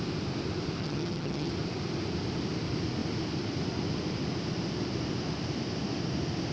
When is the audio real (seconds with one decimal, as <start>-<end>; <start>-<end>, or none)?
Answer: 0.0-0.8; 1.5-6.5